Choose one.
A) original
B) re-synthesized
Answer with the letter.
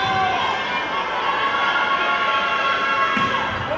A